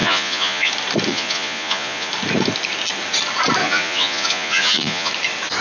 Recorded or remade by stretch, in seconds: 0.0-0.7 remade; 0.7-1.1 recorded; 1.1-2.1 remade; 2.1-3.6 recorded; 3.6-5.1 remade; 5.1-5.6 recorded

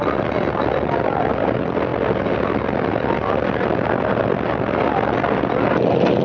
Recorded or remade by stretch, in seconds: 0.0-6.2 recorded

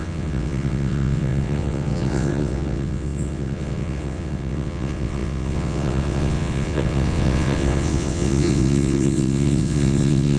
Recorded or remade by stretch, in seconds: 0.0-10.4 remade

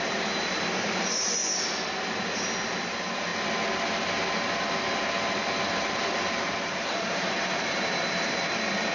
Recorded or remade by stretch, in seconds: 0.0-1.4 remade; 1.4-2.7 recorded; 2.7-3.3 remade; 3.3-5.9 recorded; 5.9-8.9 remade

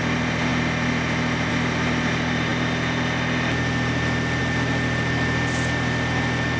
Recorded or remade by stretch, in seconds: 0.0-6.6 recorded

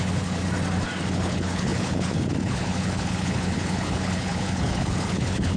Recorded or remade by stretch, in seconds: 0.0-0.4 remade; 0.4-1.1 recorded; 1.1-5.6 remade